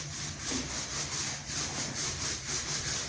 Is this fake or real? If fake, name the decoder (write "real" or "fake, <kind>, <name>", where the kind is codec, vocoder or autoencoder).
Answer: real